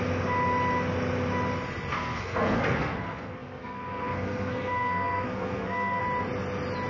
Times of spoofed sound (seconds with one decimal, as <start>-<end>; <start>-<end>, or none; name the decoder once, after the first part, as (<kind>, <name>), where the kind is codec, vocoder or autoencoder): 1.9-6.0 (codec, SNAC)